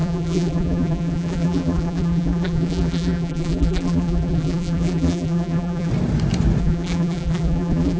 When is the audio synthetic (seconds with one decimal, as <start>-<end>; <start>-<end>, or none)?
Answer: 0.0-5.9; 6.6-8.0